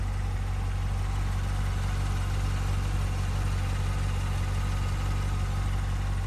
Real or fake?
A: real